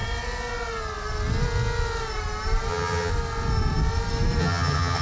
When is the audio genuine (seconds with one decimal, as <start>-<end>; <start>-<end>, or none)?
0.0-2.7; 3.1-4.4

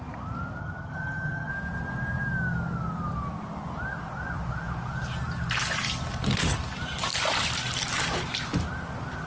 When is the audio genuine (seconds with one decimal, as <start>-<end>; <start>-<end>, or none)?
0.0-0.6; 1.5-9.3

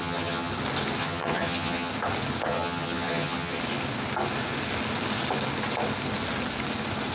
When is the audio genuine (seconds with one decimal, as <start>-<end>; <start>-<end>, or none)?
0.5-1.0; 1.9-2.5; 3.6-7.1

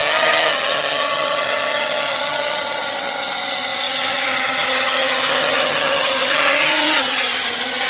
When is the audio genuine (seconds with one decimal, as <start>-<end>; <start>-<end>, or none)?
none

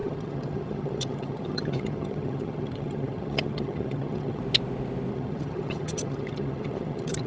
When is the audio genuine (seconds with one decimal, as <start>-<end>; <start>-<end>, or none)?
4.4-5.1